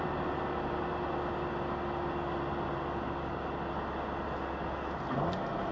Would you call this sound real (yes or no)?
yes